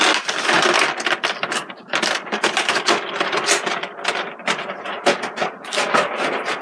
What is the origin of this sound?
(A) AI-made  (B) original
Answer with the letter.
B